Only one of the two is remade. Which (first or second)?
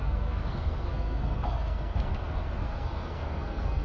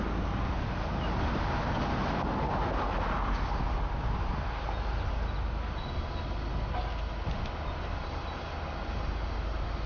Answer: first